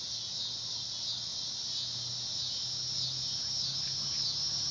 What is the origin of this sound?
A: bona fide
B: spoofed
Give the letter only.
A